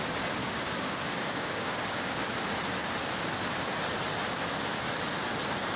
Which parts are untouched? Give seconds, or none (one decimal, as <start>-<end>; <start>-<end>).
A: 0.0-0.4; 2.2-5.8